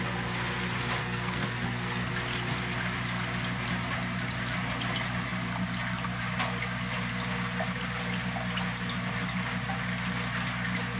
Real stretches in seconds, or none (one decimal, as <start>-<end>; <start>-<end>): 0.0-1.0; 2.1-11.0